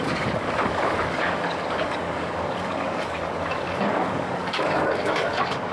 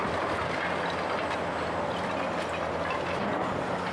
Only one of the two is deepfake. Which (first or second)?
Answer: first